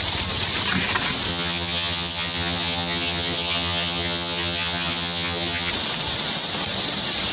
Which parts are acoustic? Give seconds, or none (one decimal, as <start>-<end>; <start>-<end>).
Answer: 0.0-1.3; 5.7-7.3